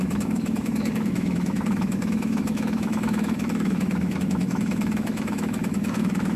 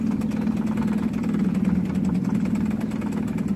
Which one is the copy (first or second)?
first